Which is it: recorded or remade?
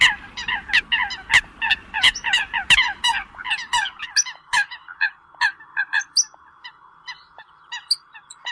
recorded